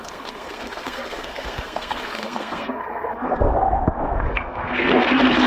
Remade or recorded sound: remade